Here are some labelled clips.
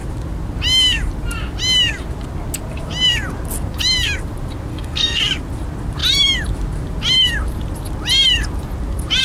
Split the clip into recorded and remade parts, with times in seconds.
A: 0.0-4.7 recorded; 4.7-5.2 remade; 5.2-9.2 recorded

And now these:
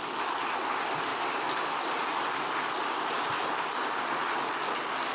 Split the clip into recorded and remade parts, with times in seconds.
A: 0.0-5.1 recorded

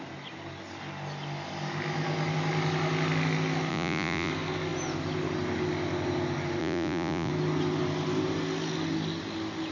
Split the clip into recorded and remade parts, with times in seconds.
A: 0.0-3.7 recorded; 3.7-4.3 remade; 4.3-6.6 recorded; 6.6-7.3 remade; 7.3-9.7 recorded